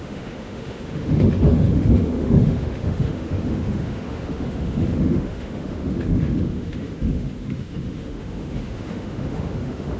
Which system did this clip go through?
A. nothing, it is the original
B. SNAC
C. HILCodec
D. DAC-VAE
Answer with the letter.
D